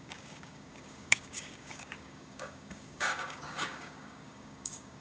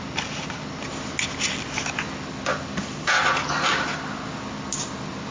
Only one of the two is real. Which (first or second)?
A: second